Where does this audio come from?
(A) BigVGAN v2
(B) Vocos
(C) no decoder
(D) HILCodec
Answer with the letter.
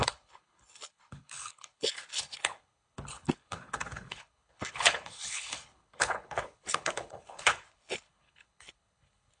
D